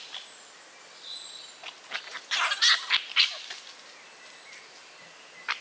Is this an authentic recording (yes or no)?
yes